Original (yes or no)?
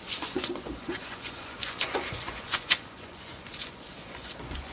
no